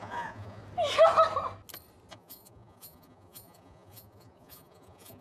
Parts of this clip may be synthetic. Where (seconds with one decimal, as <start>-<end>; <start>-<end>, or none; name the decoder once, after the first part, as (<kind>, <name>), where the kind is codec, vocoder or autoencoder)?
0.0-0.6 (vocoder, Vocos); 2.1-5.2